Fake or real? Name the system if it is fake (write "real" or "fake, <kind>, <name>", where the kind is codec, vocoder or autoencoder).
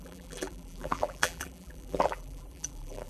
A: fake, vocoder, BigVGAN v2